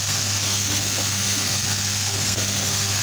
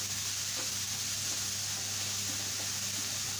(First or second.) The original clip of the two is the second